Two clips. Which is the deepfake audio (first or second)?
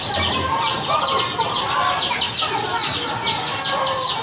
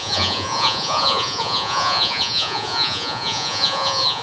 second